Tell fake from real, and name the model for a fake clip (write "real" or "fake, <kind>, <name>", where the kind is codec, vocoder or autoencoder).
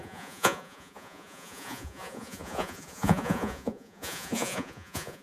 fake, vocoder, Vocos